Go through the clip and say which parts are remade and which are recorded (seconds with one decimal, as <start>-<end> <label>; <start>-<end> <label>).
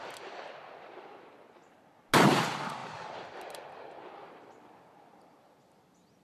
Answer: 0.0-6.2 recorded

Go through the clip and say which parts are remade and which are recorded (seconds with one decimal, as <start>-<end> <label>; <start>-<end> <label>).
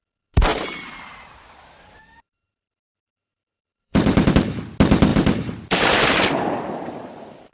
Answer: 0.0-0.5 recorded; 0.5-4.3 remade; 4.3-5.1 recorded; 5.1-7.5 remade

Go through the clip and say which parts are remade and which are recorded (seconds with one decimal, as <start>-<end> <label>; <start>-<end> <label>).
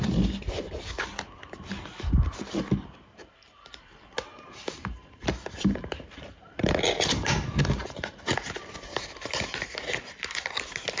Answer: 0.0-4.3 recorded; 4.3-8.6 remade; 8.6-11.0 recorded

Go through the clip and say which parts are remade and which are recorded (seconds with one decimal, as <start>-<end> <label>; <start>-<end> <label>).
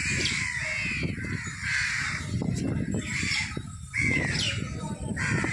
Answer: 0.0-2.0 recorded; 2.0-5.5 remade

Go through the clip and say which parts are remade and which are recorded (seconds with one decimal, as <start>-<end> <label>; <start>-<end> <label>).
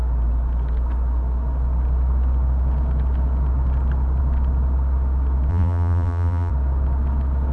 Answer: 0.0-5.5 recorded; 5.5-6.5 remade; 6.5-7.5 recorded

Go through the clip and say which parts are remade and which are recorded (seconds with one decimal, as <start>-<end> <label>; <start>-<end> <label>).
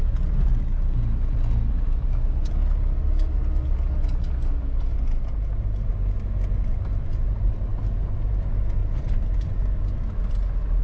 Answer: 0.0-6.7 recorded; 6.7-7.7 remade; 7.7-8.8 recorded; 8.8-9.6 remade; 9.6-10.8 recorded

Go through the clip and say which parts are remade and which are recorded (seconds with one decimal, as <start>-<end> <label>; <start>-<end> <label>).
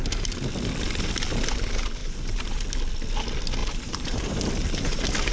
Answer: 0.0-2.0 recorded; 2.0-2.6 remade; 2.6-3.6 recorded; 3.6-4.5 remade; 4.5-5.3 recorded